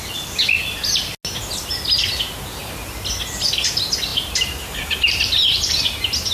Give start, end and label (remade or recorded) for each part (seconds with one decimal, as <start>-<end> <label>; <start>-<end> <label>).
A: 0.0-6.3 recorded